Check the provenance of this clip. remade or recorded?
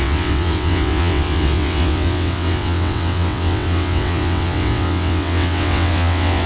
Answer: remade